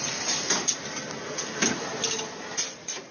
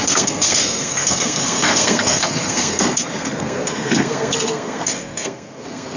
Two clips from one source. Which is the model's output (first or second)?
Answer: second